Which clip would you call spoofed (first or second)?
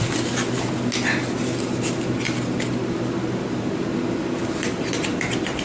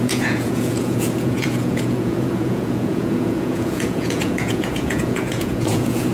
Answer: second